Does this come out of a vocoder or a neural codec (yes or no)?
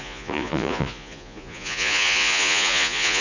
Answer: yes